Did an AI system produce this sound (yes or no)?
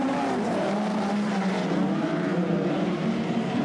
yes